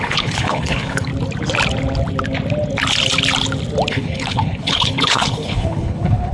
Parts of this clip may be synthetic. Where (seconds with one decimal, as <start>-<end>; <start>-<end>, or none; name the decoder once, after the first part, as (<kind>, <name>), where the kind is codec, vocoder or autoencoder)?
0.0-1.1 (codec, HILCodec); 3.9-6.3